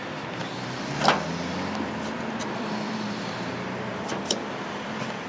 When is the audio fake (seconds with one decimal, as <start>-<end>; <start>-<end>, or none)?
2.4-5.3